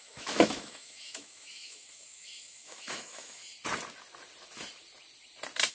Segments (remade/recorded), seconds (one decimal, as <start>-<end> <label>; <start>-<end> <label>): 0.0-3.4 remade; 3.4-5.7 recorded